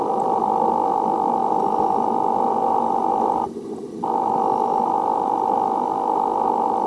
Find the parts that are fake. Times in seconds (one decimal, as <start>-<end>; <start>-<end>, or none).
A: 0.0-6.9